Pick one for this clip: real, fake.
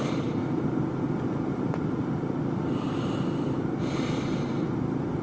real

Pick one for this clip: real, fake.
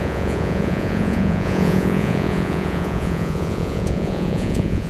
fake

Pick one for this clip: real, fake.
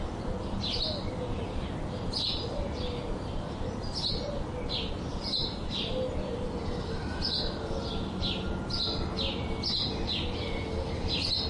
real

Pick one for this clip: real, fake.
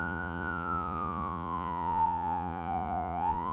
fake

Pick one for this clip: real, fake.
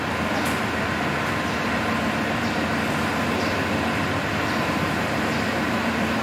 real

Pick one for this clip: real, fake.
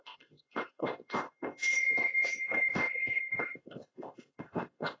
fake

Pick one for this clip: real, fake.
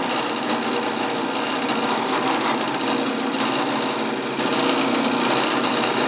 real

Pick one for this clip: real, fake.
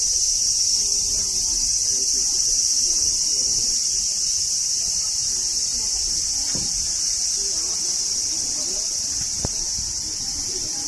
fake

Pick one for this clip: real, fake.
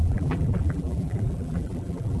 fake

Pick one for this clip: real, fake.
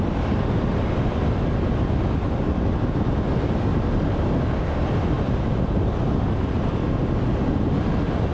real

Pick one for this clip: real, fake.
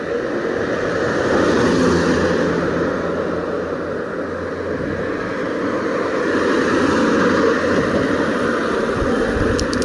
real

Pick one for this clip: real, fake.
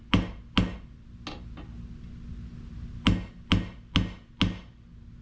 real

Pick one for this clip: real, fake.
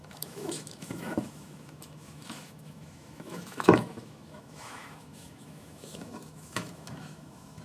fake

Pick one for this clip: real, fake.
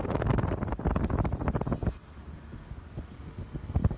real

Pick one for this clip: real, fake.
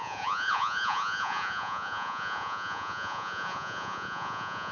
fake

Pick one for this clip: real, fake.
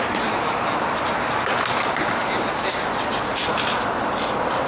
real